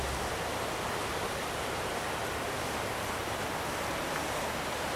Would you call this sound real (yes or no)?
yes